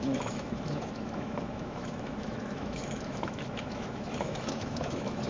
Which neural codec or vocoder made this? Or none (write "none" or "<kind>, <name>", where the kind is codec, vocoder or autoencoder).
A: autoencoder, DAC-VAE